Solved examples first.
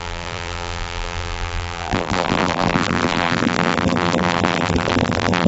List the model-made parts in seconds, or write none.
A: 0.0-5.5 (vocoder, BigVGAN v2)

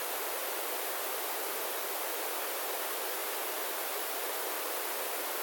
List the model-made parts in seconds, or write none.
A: 0.0-5.4 (vocoder, BigVGAN v2)